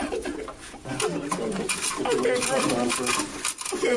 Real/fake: real